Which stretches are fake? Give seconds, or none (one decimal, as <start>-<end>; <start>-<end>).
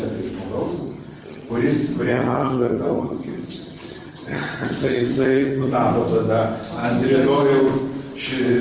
0.8-1.5; 2.1-5.7